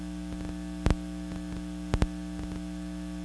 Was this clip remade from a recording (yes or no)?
no